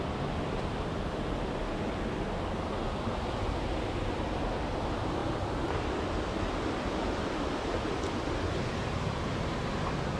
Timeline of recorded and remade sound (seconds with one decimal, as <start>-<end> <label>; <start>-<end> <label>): 0.0-10.2 recorded